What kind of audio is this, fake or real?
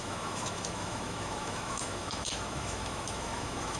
fake